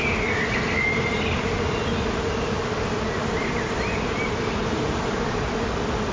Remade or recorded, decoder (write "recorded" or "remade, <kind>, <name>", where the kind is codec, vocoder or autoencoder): recorded